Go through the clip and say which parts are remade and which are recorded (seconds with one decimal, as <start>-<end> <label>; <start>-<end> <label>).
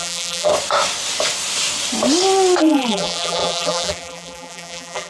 0.0-0.5 remade; 0.5-2.6 recorded; 2.6-5.1 remade